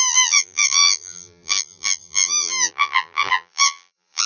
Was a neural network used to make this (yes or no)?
yes